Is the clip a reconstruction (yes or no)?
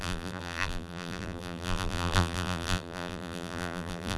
yes